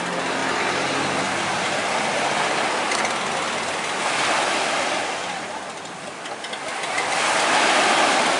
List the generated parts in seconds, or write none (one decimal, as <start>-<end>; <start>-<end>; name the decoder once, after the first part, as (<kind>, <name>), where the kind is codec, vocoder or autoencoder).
none

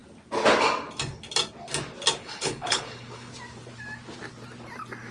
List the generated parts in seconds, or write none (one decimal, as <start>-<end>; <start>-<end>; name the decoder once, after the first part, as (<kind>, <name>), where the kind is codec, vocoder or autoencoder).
2.2-3.3 (codec, HILCodec)

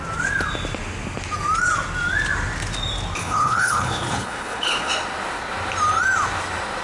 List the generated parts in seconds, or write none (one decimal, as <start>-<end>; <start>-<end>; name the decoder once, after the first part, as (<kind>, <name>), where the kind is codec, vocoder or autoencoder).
3.2-4.9 (codec, HILCodec)

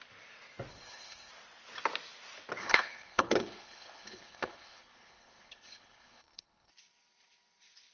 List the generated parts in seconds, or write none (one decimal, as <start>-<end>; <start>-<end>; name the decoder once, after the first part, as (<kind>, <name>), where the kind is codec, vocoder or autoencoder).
0.7-1.3 (codec, HILCodec); 2.6-6.7

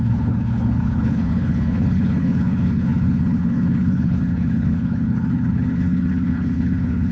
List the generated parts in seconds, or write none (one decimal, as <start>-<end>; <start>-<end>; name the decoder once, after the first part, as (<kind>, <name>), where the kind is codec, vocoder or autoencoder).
0.0-7.1 (codec, HILCodec)

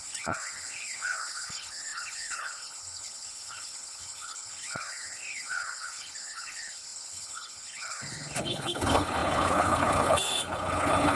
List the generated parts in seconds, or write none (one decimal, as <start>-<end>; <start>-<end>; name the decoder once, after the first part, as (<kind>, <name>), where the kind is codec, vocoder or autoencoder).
0.0-11.2 (codec, HILCodec)

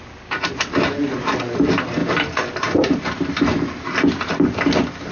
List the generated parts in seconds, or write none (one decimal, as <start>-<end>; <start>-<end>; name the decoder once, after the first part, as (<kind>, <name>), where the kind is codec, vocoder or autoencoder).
none